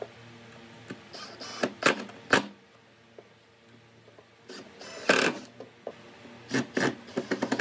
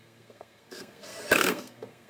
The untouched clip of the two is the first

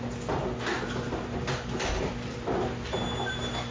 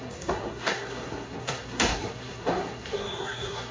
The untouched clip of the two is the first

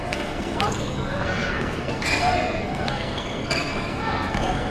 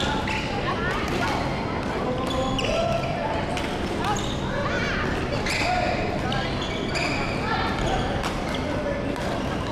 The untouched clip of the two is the second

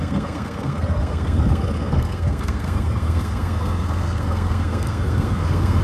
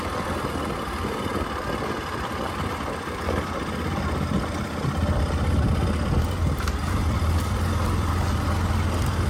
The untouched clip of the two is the second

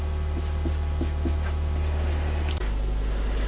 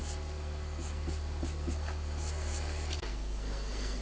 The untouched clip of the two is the first